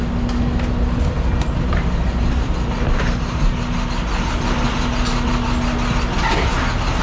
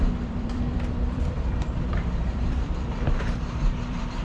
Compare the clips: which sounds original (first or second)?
first